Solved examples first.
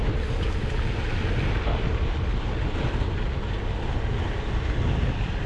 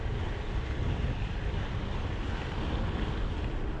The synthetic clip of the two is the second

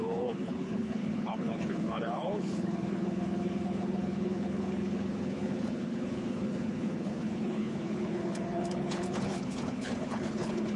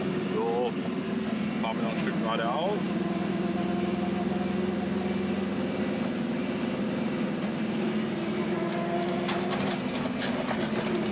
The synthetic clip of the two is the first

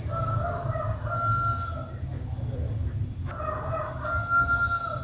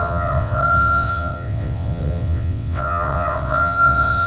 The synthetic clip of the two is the second